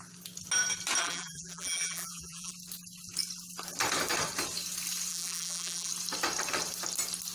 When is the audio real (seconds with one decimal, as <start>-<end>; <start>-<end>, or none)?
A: 0.0-1.0; 2.5-5.1; 5.9-7.3